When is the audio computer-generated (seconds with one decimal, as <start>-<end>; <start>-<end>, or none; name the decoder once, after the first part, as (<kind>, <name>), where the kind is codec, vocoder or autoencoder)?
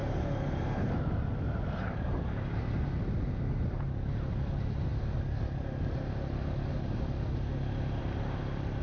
none